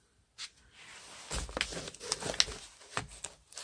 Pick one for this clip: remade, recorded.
recorded